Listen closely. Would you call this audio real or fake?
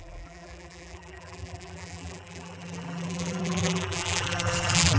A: fake